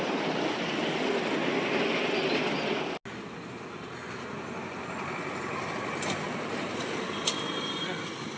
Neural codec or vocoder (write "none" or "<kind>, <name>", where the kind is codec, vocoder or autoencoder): none